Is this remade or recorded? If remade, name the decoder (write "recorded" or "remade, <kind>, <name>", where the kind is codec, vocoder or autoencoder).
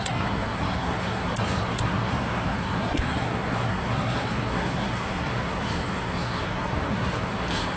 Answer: remade, codec, SNAC